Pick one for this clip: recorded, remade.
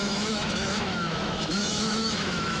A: remade